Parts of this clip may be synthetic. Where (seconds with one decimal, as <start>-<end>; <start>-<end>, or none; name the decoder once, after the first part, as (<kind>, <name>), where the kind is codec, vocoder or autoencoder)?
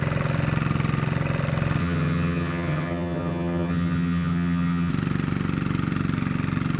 1.8-4.9 (vocoder, HiFi-GAN)